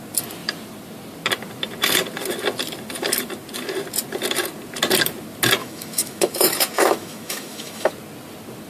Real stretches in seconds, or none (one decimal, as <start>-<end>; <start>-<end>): 0.0-5.6; 7.9-8.7